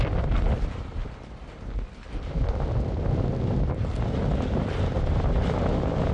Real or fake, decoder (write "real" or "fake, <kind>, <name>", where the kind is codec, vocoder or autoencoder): real